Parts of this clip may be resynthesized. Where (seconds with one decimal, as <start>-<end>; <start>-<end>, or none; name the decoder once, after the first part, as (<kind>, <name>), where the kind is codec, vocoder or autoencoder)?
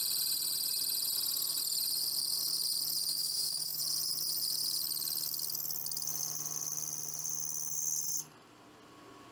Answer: 3.1-3.8 (autoencoder, DAC-VAE)